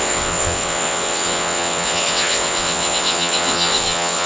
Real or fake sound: fake